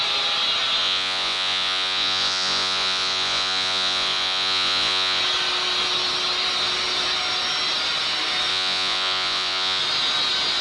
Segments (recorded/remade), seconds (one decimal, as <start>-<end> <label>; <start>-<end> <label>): 0.0-0.8 recorded; 0.8-5.2 remade; 5.2-8.5 recorded; 8.5-9.8 remade; 9.8-10.6 recorded